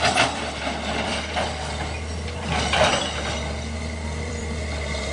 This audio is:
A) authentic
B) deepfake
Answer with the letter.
B